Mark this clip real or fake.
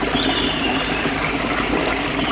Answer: real